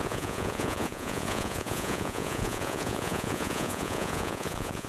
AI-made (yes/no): yes